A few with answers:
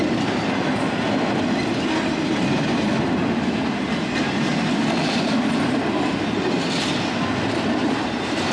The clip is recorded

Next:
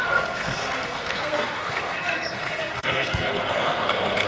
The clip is remade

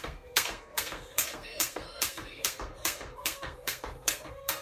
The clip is remade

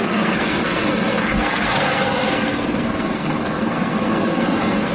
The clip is remade